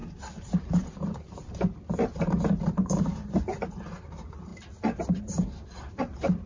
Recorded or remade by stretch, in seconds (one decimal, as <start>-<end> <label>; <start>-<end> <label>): 0.0-3.5 remade; 3.5-4.0 recorded; 4.0-4.5 remade; 4.5-5.2 recorded; 5.2-6.5 remade